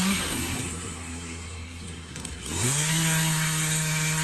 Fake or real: fake